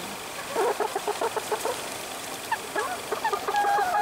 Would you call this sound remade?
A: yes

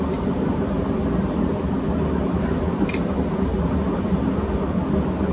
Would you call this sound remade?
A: yes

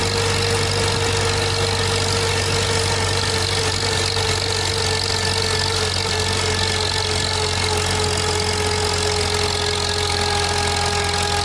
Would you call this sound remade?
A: no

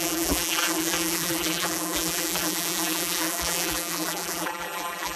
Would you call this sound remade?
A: yes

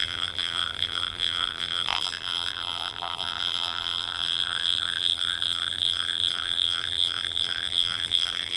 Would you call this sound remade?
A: yes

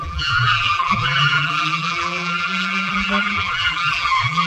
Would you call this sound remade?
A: yes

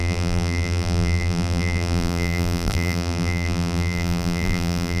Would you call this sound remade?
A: yes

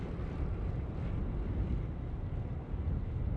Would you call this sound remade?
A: no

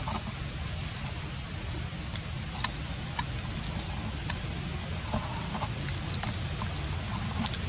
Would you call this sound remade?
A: no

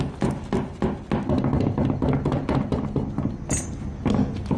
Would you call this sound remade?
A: no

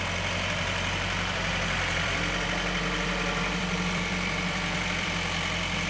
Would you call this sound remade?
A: yes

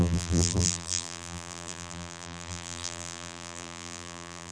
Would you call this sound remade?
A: yes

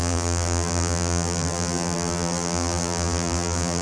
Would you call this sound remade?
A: yes